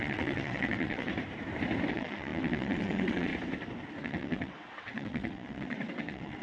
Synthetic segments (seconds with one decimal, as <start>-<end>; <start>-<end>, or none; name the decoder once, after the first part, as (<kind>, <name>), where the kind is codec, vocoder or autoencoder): 0.0-1.1 (vocoder, WaveNeXt); 1.9-3.3; 4.0-6.4